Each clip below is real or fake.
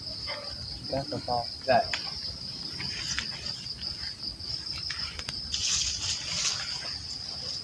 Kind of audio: real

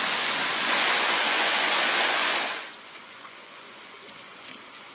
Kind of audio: fake